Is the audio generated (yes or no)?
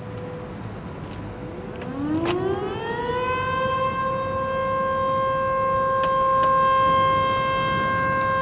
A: no